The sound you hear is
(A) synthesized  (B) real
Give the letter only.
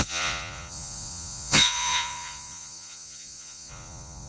A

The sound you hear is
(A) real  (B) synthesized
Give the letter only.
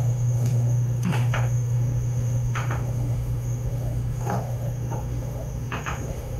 B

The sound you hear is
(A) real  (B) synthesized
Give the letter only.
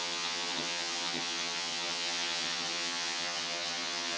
B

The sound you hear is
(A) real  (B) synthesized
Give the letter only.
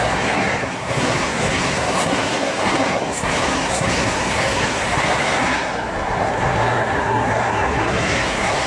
B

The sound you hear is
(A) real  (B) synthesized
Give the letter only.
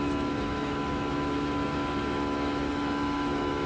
B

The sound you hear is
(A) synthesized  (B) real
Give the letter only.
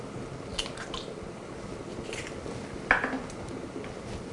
B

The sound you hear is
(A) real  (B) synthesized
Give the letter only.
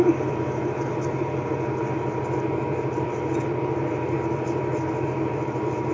A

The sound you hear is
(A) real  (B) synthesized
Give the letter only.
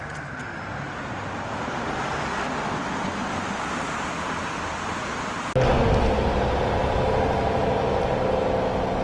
A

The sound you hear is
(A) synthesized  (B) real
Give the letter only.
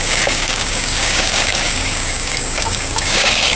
A